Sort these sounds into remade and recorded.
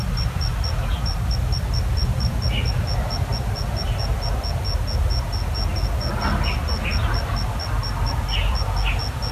recorded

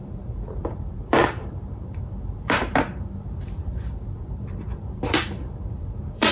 remade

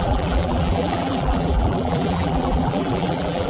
remade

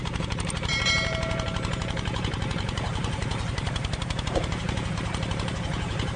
remade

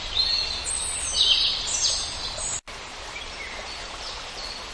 recorded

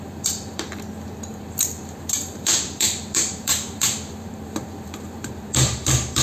remade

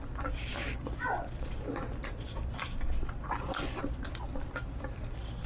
remade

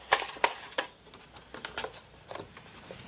remade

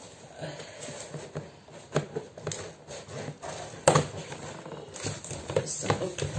recorded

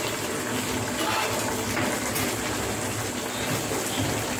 recorded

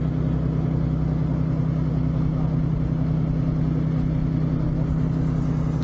recorded